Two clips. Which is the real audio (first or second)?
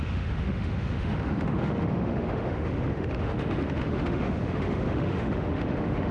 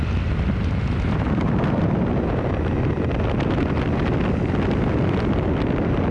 second